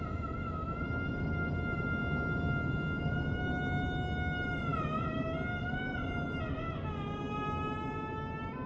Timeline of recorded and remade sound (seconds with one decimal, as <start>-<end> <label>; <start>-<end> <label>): 0.0-8.7 recorded